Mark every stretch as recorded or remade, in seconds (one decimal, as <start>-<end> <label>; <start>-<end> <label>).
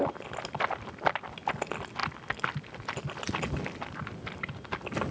0.0-5.1 recorded